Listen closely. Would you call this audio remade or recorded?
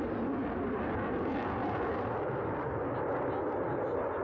recorded